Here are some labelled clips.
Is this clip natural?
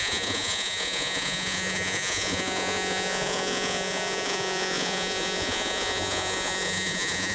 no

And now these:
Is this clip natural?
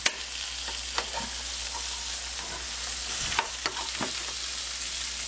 yes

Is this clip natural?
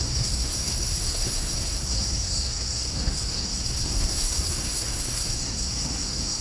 no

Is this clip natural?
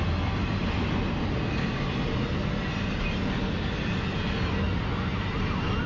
yes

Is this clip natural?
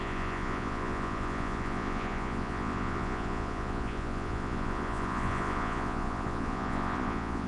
no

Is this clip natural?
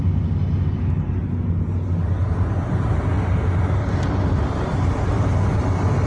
yes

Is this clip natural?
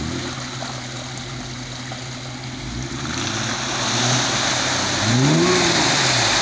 yes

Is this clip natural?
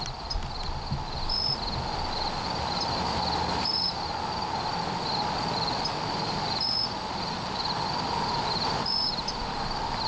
yes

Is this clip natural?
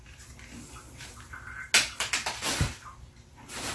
yes